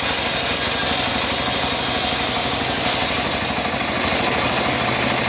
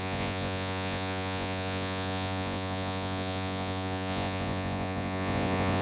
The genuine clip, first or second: first